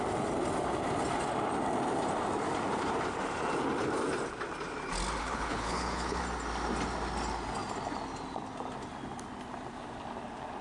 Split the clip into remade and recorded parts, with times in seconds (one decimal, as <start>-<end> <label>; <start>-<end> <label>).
0.0-5.2 recorded; 5.2-6.2 remade; 6.2-10.6 recorded